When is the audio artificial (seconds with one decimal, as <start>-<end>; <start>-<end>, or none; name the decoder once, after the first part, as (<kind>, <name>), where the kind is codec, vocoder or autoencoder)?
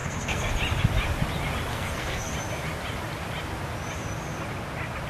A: 0.0-0.5 (codec, SNAC); 1.7-2.3